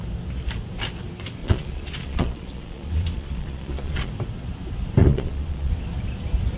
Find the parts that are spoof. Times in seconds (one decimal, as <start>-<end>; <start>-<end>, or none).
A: 1.4-4.1; 5.0-5.7